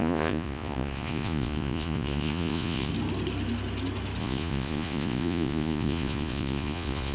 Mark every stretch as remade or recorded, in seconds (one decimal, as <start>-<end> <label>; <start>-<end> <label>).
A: 0.0-2.9 remade; 2.9-4.2 recorded; 4.2-7.1 remade